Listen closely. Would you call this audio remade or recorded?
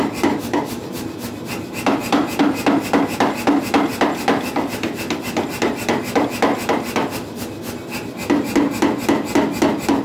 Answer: recorded